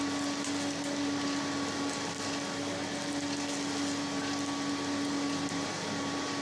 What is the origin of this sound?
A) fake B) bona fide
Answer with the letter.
B